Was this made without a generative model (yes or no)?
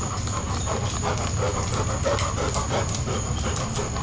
yes